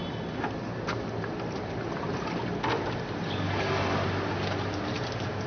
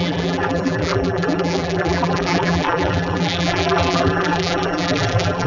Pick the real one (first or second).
first